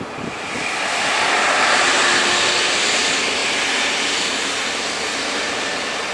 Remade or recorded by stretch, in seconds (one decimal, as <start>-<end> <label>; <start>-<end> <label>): 0.0-6.1 recorded